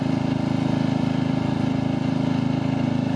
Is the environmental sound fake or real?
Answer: real